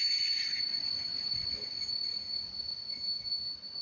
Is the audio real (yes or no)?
yes